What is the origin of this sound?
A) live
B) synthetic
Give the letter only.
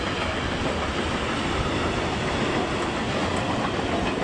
A